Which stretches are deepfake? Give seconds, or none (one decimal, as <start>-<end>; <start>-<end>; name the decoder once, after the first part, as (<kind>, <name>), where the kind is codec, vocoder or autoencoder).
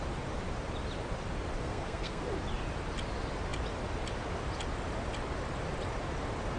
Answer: 1.6-2.2 (codec, SNAC)